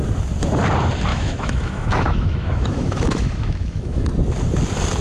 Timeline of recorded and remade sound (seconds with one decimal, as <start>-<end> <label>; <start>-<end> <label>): 0.0-1.1 recorded; 1.1-4.1 remade; 4.1-5.0 recorded